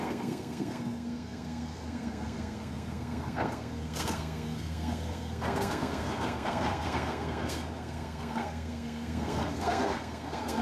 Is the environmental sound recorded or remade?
remade